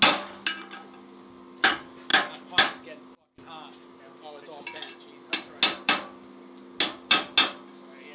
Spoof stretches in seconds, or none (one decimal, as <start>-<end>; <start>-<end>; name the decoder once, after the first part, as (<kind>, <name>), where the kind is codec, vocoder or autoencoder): none